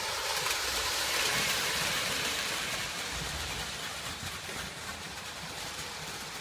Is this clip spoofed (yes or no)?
yes